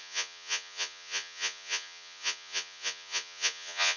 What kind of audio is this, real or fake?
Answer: fake